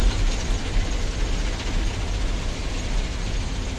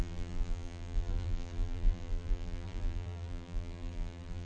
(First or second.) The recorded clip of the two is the first